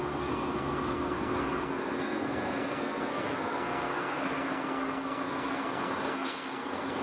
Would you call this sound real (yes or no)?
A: no